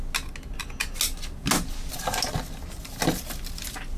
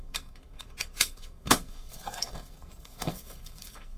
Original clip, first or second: first